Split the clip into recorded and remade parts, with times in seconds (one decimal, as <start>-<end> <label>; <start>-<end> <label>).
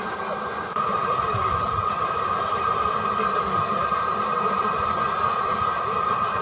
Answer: 0.0-6.4 recorded